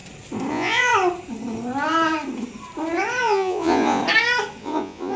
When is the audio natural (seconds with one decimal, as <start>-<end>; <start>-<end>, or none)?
0.0-0.5; 0.9-3.2; 4.0-4.6